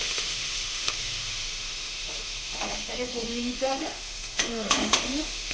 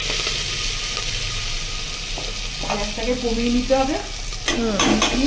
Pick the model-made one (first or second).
first